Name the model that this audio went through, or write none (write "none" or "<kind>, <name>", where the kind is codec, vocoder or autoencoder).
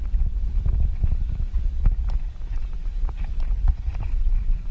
none